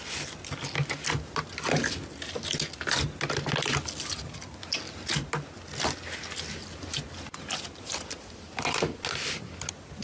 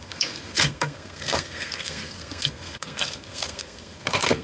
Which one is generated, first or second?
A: second